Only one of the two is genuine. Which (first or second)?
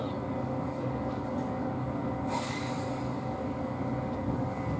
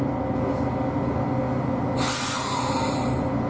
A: second